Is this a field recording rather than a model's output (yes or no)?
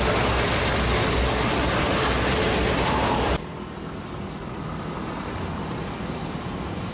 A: yes